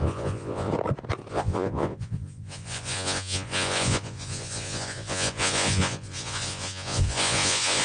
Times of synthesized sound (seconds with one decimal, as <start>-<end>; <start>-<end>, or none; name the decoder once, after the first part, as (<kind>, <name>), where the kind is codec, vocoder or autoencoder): 0.0-0.7 (vocoder, Vocos); 1.3-7.8